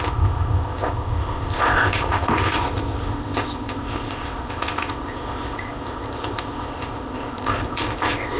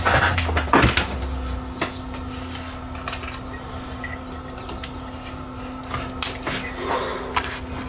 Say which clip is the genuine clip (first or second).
second